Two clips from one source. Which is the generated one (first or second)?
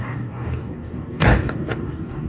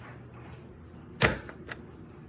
first